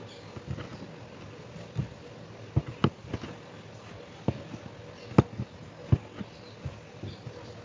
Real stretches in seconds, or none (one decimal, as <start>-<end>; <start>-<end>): 0.0-7.6